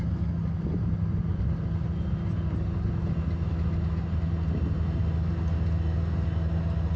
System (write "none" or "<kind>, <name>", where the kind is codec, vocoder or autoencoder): none